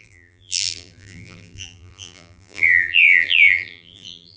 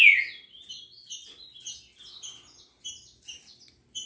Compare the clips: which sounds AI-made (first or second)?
first